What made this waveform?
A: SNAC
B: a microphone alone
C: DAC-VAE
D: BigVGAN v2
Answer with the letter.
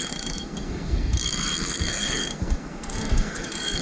A